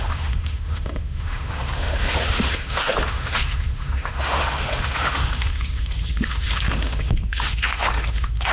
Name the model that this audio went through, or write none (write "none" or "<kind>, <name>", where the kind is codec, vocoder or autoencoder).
autoencoder, DAC-VAE